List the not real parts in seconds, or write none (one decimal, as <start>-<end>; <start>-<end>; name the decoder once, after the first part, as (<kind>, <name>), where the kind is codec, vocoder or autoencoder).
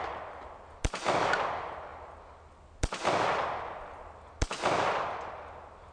none